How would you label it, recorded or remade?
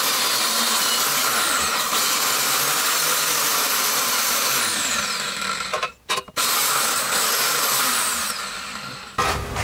recorded